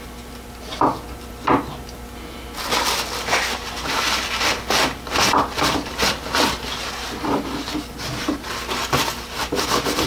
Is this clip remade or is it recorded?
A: recorded